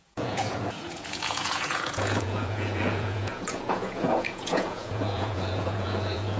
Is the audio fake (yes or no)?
yes